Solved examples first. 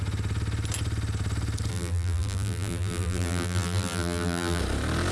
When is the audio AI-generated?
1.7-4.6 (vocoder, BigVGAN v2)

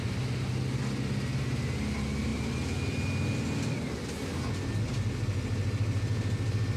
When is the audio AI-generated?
none

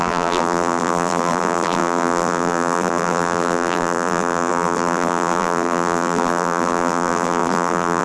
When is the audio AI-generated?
0.0-8.0 (vocoder, BigVGAN v2)

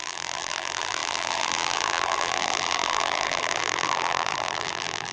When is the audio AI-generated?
0.0-5.1 (vocoder, BigVGAN v2)

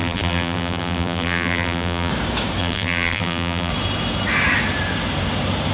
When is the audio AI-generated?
0.0-2.1 (vocoder, BigVGAN v2); 2.6-3.7

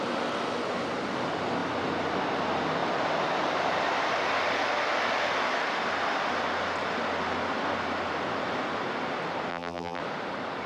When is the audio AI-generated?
9.5-10.0 (vocoder, BigVGAN v2)

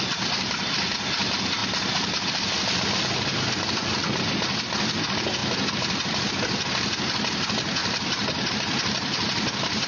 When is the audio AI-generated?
1.6-4.2 (vocoder, BigVGAN v2); 5.4-6.3; 7.8-8.5